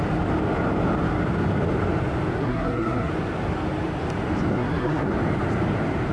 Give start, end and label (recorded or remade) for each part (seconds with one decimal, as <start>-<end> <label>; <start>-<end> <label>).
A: 0.0-2.4 recorded; 2.4-3.1 remade; 3.1-4.5 recorded; 4.5-5.1 remade; 5.1-6.1 recorded